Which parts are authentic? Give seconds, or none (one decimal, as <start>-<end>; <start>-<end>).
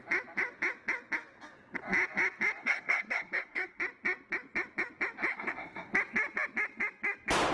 0.0-2.6; 3.8-5.3; 5.9-7.5